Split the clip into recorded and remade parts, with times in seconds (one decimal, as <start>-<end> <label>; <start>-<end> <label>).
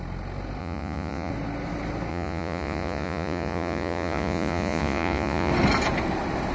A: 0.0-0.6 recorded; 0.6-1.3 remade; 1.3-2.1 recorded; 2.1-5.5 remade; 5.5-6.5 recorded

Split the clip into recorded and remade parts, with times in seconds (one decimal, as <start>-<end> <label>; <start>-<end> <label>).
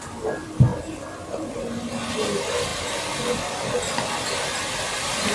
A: 0.0-5.3 recorded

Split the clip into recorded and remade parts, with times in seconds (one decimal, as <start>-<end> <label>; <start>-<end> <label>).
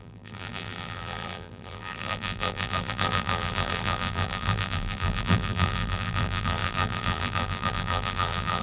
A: 0.0-8.6 remade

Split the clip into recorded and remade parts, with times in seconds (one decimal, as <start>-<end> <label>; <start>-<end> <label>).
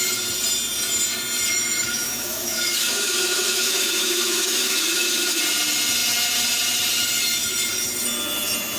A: 0.0-1.5 recorded; 1.5-5.4 remade; 5.4-8.8 recorded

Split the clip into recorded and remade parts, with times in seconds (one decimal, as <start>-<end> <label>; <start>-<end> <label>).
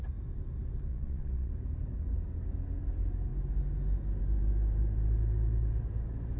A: 0.0-0.9 recorded; 0.9-1.5 remade; 1.5-6.4 recorded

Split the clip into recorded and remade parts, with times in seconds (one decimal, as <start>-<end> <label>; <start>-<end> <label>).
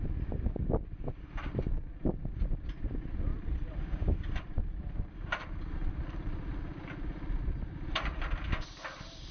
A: 0.0-3.3 recorded; 3.3-5.7 remade; 5.7-9.3 recorded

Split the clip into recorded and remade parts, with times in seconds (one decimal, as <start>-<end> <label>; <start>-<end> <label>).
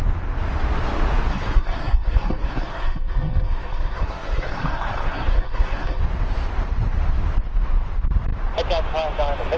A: 0.0-1.3 recorded; 1.3-6.0 remade; 6.0-9.6 recorded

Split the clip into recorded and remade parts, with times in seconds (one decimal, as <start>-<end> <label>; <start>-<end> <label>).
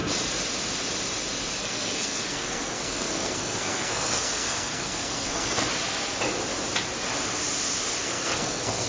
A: 0.0-1.6 recorded; 1.6-5.7 remade; 5.7-8.0 recorded; 8.0-8.9 remade